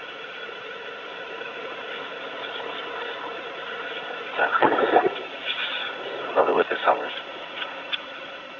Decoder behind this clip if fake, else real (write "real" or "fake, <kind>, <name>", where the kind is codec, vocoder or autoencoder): fake, vocoder, Vocos